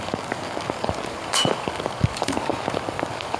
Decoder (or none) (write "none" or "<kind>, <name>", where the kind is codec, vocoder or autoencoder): codec, DAC